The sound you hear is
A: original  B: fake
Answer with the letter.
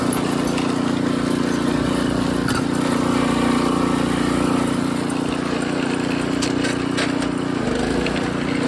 A